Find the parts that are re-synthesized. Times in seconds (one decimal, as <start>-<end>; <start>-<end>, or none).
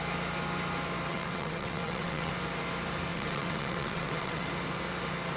1.1-2.3; 3.1-4.5